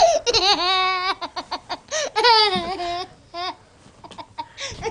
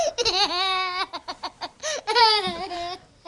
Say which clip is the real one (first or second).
first